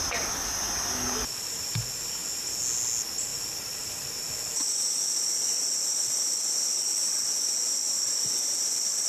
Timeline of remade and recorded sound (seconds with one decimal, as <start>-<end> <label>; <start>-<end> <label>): 0.0-9.1 recorded